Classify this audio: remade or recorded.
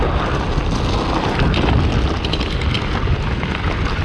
recorded